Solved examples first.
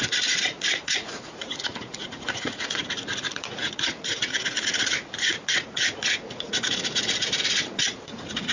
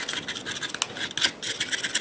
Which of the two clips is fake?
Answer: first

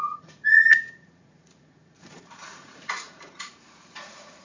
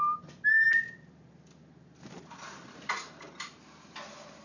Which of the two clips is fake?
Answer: first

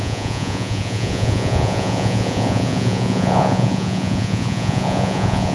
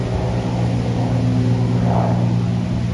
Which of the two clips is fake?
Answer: first